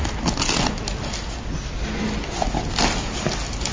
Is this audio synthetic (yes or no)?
no